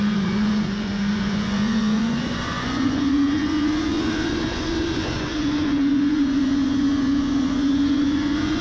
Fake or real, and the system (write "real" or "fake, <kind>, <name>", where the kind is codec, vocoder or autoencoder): fake, vocoder, Vocos